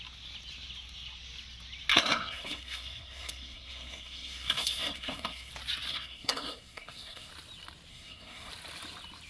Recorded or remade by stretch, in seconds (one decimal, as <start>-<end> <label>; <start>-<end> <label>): 0.0-1.9 recorded; 1.9-5.5 remade; 5.5-5.9 recorded; 5.9-7.3 remade; 7.3-7.9 recorded; 7.9-8.5 remade; 8.5-9.3 recorded

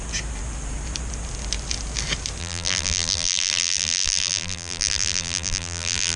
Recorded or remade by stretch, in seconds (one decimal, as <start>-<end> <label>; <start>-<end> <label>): 0.0-2.4 recorded; 2.4-6.2 remade

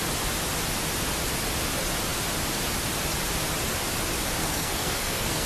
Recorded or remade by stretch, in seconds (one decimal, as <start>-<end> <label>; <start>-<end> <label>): 0.0-4.4 recorded; 4.4-5.5 remade

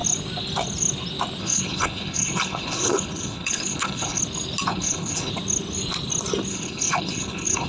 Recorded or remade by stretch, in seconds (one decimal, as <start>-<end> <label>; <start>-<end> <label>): 0.0-1.4 recorded; 1.4-4.2 remade; 4.2-4.7 recorded; 4.7-5.3 remade; 5.3-6.5 recorded; 6.5-7.7 remade

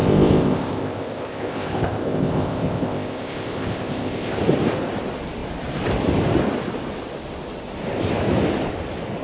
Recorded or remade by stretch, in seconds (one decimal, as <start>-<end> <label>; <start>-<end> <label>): 0.0-4.4 remade; 4.4-9.2 recorded